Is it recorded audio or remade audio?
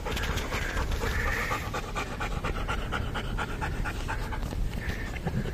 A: recorded